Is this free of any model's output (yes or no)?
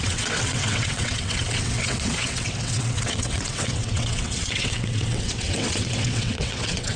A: no